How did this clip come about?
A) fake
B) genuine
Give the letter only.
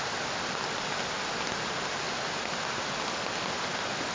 B